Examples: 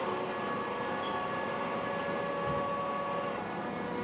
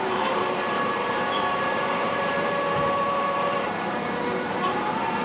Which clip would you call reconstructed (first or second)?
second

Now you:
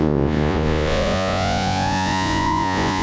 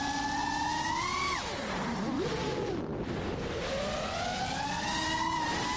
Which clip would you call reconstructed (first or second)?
first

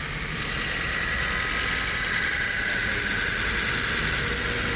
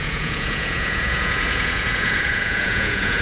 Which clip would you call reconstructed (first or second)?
second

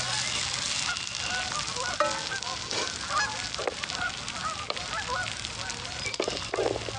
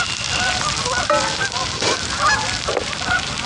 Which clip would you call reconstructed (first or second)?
second